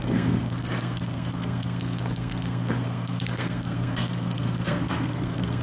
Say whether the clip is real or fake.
fake